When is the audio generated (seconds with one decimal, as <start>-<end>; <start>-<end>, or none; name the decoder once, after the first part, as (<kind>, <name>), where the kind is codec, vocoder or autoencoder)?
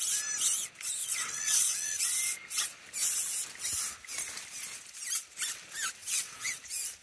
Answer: 1.0-2.0 (vocoder, WaveNeXt); 6.0-6.6